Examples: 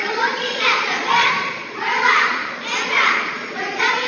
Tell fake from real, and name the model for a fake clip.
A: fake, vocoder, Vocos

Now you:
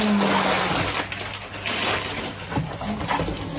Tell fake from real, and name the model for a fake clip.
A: real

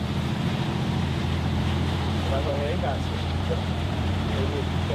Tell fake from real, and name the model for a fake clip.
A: fake, vocoder, BigVGAN v2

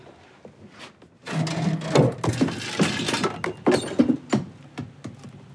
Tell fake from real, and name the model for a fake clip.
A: real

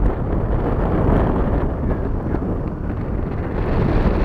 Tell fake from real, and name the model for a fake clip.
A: real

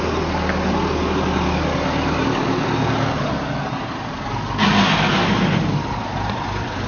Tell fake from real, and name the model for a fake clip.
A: real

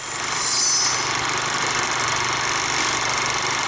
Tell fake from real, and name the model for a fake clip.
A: real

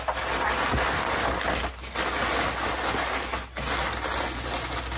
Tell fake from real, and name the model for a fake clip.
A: real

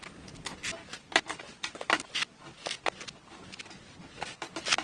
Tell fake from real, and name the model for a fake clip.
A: real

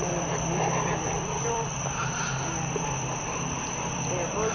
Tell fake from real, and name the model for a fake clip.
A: fake, vocoder, BigVGAN v2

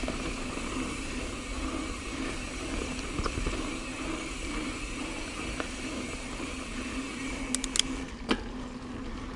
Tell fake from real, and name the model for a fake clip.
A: real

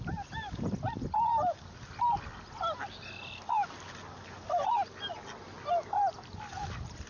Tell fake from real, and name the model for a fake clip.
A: real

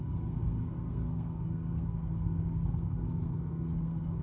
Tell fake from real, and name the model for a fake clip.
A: fake, codec, SNAC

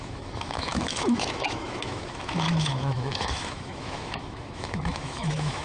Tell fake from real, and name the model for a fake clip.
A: fake, autoencoder, DAC-VAE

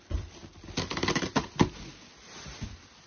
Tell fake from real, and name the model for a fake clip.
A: real